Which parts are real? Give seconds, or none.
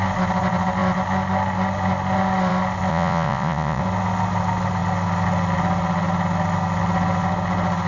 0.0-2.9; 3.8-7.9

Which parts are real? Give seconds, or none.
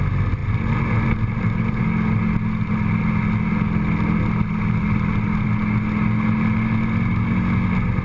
0.0-8.0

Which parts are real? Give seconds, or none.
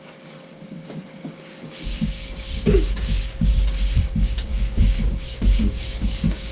none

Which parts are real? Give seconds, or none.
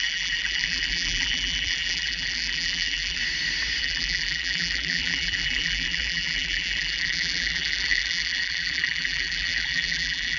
3.2-3.8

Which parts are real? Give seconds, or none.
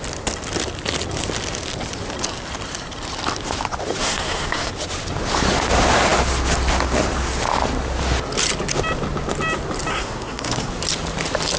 0.0-4.0; 4.7-9.9; 10.7-11.6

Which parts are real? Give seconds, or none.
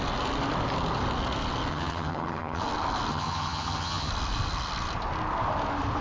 0.0-1.7; 2.6-3.1; 4.1-6.0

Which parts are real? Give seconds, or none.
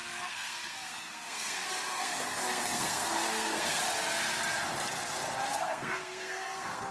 3.8-5.5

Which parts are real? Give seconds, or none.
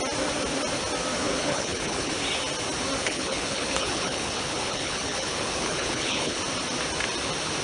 0.0-1.2; 2.1-3.0; 6.4-7.6